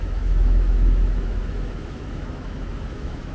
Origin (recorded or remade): remade